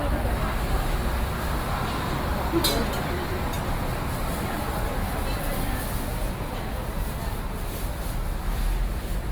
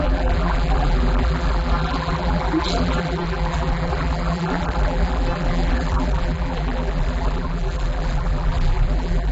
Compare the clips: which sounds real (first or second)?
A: first